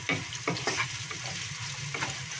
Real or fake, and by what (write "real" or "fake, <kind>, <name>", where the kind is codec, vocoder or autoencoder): real